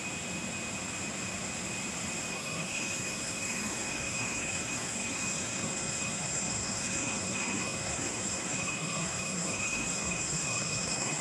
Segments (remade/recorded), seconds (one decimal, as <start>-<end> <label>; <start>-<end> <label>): 0.0-2.3 recorded; 2.3-11.2 remade